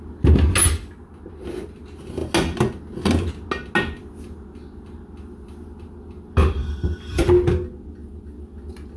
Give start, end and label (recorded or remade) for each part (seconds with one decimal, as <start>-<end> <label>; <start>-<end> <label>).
0.0-9.0 recorded